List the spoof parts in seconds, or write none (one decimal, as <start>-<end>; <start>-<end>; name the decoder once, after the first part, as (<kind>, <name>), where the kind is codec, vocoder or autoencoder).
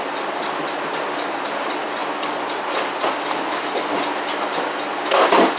none